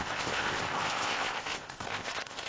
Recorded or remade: remade